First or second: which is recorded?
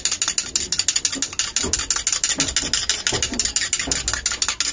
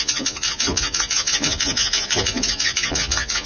first